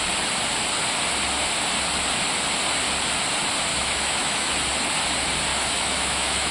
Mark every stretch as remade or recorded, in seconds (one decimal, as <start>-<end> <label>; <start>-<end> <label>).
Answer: 0.0-3.7 recorded; 3.7-4.5 remade; 4.5-5.5 recorded; 5.5-6.5 remade